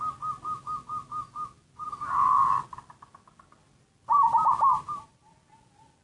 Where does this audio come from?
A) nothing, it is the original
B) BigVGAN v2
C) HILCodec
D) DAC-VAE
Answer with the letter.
A